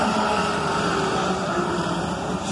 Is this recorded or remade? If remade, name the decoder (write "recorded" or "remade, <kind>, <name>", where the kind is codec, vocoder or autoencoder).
remade, vocoder, BigVGAN v2